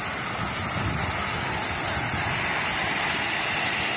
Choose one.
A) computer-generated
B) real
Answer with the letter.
B